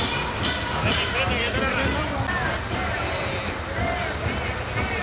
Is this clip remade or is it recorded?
recorded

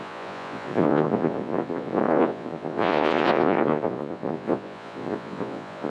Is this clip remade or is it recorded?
remade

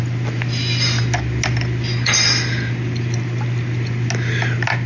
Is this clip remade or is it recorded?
recorded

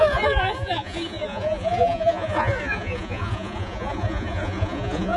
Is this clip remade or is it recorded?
remade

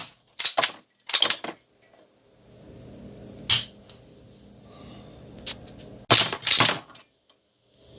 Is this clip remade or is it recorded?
recorded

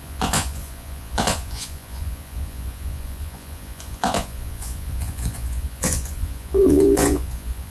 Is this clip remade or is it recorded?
remade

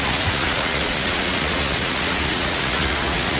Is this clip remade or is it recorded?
remade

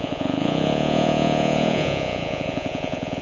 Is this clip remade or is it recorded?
remade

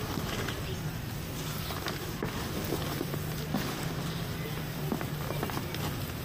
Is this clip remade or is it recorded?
recorded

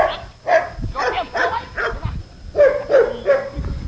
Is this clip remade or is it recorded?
recorded